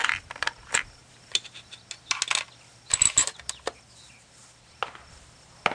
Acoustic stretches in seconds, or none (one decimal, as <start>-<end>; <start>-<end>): 0.0-5.7